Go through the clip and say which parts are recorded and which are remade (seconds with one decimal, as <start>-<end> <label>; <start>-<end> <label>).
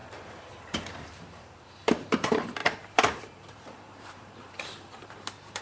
0.0-5.6 remade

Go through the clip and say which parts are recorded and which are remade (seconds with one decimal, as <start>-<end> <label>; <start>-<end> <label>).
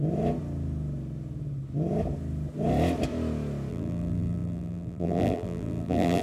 0.0-3.7 recorded; 3.7-6.2 remade